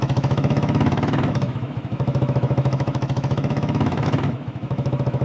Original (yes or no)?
no